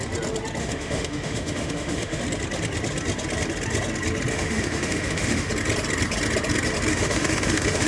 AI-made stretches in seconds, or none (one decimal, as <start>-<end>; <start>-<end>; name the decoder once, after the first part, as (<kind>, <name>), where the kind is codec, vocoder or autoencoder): 0.6-2.2 (autoencoder, DAC-VAE); 4.3-5.5; 6.9-7.9